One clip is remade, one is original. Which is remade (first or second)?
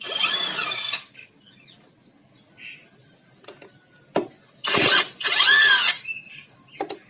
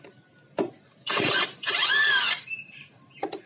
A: second